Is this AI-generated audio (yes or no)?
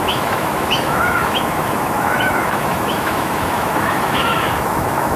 yes